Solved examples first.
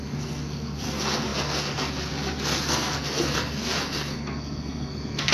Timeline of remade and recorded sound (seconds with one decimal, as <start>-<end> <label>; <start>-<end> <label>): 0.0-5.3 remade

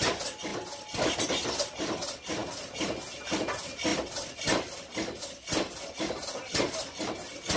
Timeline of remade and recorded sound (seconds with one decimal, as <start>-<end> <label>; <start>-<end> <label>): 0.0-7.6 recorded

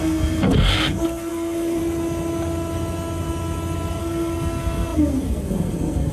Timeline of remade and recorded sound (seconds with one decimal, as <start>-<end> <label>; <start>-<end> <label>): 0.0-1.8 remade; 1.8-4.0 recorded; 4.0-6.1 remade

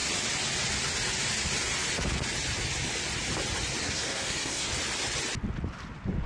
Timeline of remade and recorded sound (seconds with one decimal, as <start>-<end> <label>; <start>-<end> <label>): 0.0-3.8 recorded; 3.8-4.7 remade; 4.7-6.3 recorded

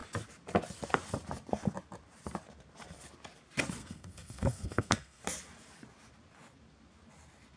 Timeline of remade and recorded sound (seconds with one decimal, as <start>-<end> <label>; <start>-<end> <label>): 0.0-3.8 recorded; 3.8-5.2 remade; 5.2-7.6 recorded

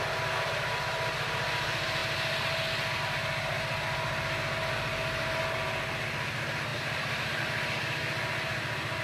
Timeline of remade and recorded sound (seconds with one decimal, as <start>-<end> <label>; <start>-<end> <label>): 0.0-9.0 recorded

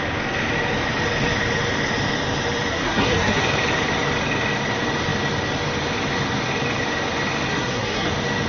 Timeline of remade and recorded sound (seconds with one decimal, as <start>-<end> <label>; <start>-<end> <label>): 0.0-2.7 recorded; 2.7-3.4 remade; 3.4-7.5 recorded; 7.5-8.1 remade; 8.1-8.5 recorded